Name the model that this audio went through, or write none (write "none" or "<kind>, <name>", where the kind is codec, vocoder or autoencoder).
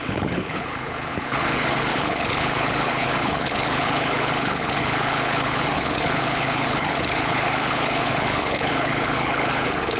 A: codec, HILCodec